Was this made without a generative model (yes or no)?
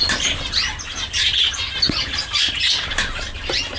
yes